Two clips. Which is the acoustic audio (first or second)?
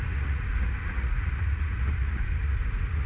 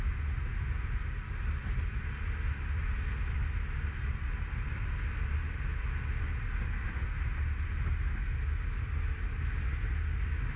second